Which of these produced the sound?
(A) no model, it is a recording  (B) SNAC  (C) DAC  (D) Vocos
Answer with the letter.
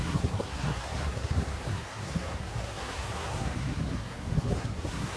B